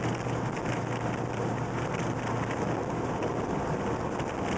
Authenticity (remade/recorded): recorded